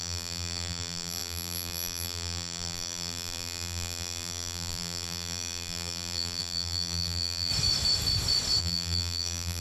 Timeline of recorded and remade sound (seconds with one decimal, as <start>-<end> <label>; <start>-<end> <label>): 0.0-7.5 remade; 7.5-8.6 recorded; 8.6-9.6 remade

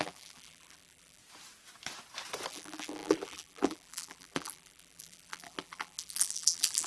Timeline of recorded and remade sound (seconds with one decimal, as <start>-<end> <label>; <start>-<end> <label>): 0.0-1.2 remade; 1.2-2.5 recorded; 2.5-6.9 remade